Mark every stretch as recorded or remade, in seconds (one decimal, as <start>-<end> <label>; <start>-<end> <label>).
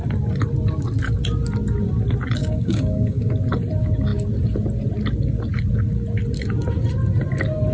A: 0.0-2.4 recorded; 2.4-3.3 remade; 3.3-7.7 recorded